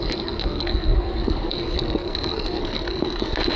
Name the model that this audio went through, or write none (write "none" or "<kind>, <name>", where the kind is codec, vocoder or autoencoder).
codec, SNAC